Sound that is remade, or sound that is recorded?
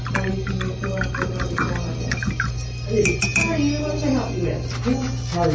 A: recorded